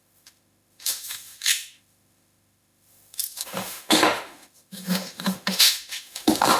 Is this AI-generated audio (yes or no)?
yes